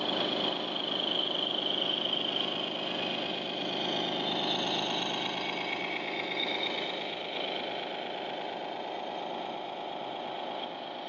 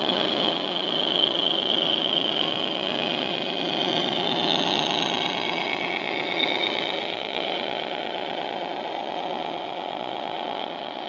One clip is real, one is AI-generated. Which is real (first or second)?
first